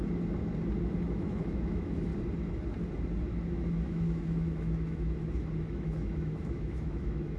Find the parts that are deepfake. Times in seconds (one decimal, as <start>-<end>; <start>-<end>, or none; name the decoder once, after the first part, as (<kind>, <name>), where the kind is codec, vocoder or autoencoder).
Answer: 1.1-2.1 (autoencoder, DAC-VAE); 3.5-7.4